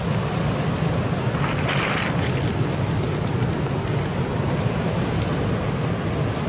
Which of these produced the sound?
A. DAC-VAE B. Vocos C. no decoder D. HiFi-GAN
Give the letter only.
C